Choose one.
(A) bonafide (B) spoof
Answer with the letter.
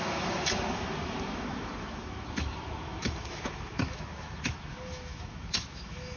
B